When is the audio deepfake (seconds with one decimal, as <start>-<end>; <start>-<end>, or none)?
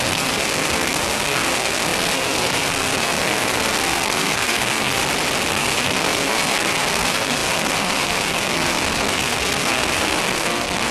0.0-5.0; 5.5-10.9